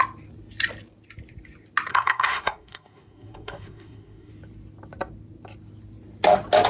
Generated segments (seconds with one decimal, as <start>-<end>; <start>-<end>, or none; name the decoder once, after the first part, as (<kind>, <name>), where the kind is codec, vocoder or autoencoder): 1.9-4.3 (codec, SNAC)